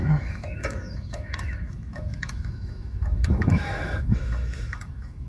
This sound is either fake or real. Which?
fake